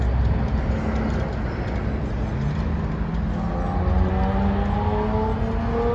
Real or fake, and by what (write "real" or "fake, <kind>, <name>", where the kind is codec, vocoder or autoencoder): real